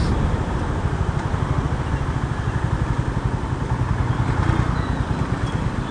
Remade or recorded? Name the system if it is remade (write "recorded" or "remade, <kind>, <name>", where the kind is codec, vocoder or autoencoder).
recorded